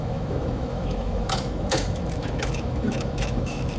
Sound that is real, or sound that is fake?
fake